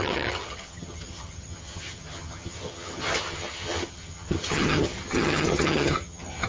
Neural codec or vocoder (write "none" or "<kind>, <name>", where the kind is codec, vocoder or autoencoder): vocoder, HiFi-GAN